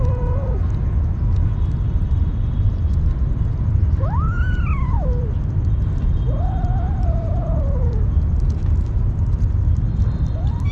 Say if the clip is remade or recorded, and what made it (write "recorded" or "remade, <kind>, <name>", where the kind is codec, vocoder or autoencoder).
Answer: recorded